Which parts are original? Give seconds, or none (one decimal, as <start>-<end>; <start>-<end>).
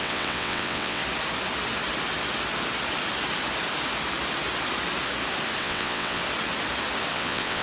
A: 1.0-5.6; 6.2-7.1